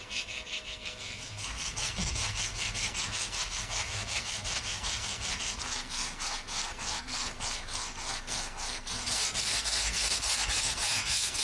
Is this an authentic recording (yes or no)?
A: no